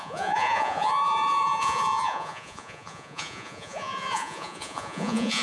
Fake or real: fake